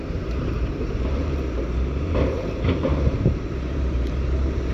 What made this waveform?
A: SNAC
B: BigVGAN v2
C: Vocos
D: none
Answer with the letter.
B